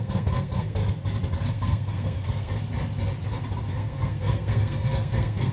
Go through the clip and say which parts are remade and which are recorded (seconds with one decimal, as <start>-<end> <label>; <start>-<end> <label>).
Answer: 0.0-0.8 remade; 0.8-1.5 recorded; 1.5-2.5 remade; 2.5-3.7 recorded; 3.7-5.5 remade